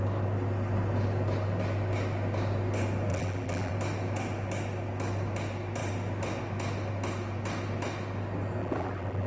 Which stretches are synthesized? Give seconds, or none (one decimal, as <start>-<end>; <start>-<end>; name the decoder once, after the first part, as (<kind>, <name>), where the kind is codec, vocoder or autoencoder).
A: 3.1-3.7 (vocoder, BigVGAN v2); 8.6-9.3